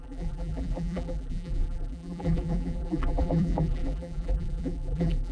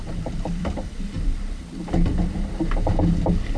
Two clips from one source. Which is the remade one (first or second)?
first